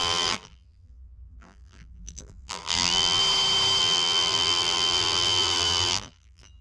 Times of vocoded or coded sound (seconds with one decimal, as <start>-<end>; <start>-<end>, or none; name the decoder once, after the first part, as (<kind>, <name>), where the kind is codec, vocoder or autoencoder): 0.0-3.2 (vocoder, BigVGAN v2); 3.8-6.6